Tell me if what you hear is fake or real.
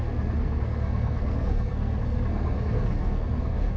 fake